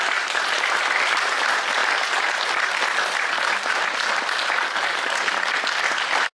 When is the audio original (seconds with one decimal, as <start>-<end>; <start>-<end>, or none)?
0.0-6.4